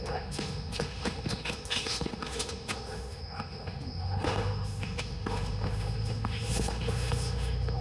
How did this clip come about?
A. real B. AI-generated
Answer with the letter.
B